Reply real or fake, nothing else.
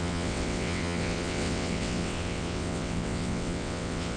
fake